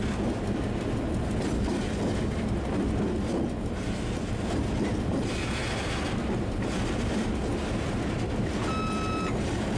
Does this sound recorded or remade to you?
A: recorded